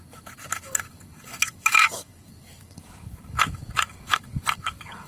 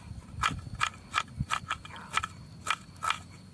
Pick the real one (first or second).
second